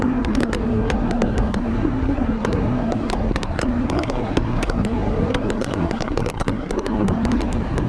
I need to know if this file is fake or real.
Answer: fake